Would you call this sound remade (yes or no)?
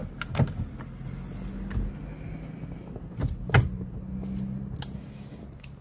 no